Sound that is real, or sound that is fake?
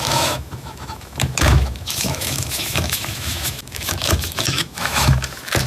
fake